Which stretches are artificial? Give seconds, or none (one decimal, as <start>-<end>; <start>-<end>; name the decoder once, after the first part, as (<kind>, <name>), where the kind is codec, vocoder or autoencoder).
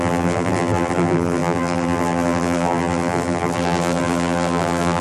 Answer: 0.0-5.0 (vocoder, BigVGAN v2)